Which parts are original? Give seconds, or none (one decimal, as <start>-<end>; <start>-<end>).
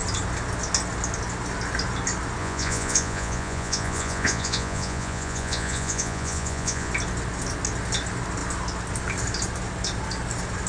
0.0-2.4; 6.9-10.7